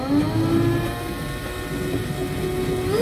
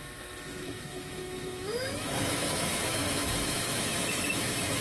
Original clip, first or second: first